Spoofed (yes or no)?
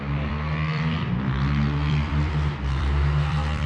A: yes